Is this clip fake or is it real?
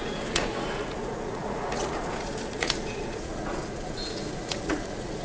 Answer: fake